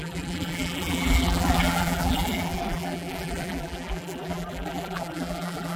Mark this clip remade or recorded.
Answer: remade